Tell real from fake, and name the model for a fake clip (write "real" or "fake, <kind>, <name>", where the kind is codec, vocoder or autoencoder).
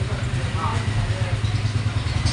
real